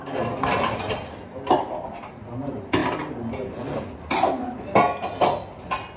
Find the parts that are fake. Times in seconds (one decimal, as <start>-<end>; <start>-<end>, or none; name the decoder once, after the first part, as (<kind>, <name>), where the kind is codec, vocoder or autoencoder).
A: none